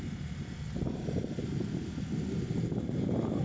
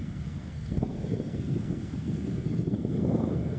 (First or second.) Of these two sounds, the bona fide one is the first